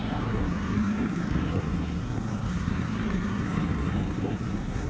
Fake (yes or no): yes